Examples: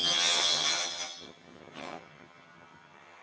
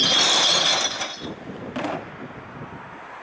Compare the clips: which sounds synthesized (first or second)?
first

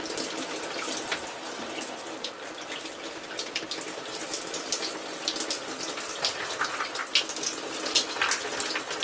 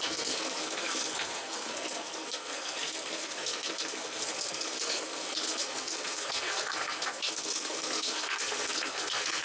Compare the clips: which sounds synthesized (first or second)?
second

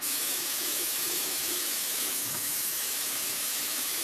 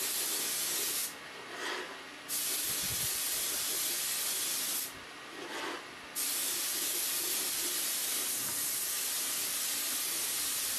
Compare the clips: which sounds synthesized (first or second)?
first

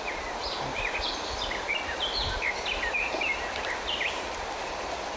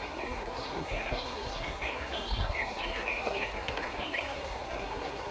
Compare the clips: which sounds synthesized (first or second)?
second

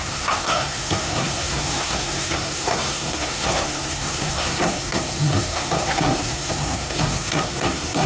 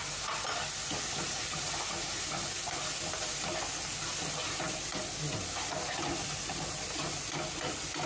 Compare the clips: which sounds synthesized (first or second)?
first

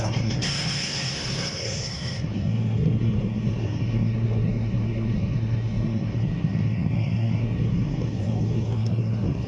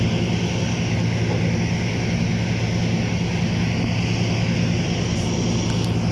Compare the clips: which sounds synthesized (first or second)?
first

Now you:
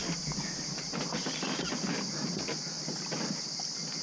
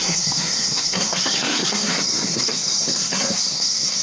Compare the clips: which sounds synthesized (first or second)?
second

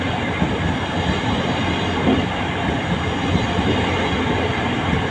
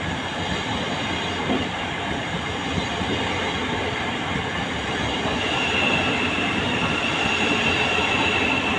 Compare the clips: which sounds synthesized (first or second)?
second